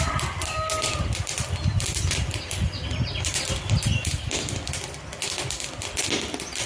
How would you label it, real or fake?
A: real